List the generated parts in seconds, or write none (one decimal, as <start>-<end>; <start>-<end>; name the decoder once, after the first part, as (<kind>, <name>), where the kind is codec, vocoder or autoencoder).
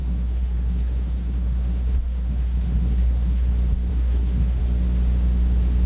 0.0-3.5 (codec, SNAC); 3.9-4.6